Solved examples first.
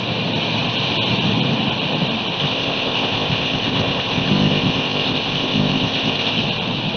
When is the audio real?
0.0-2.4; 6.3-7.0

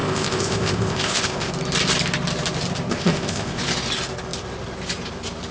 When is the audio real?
1.5-2.9; 3.6-5.5

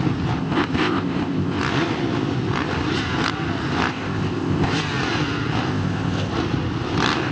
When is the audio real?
0.0-0.4; 1.6-3.9; 4.7-5.7; 6.3-7.3

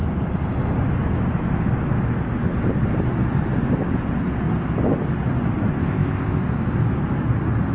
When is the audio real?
0.0-5.8; 6.4-7.7

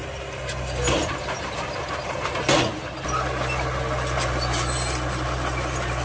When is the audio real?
0.0-6.0

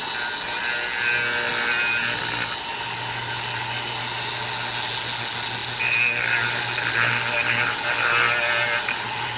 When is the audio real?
0.0-9.4

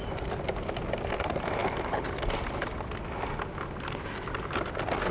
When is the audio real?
0.0-5.1

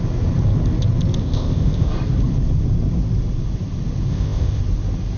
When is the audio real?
0.0-1.2; 1.9-4.1; 4.6-5.2